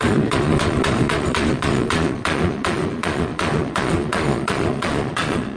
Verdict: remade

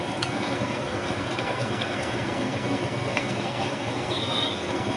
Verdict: remade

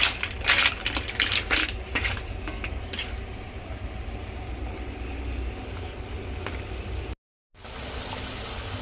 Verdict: recorded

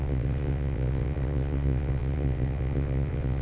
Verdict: remade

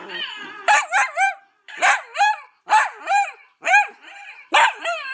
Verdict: remade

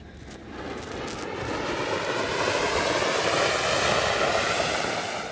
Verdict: recorded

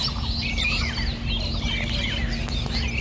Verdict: recorded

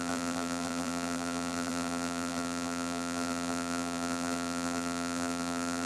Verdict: remade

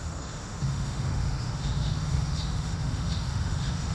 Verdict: remade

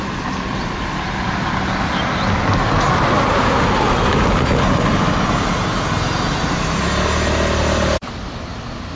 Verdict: recorded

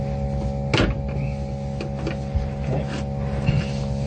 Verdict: recorded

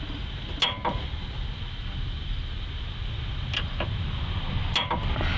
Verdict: recorded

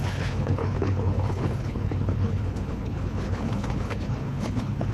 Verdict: remade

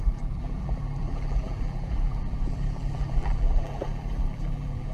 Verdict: remade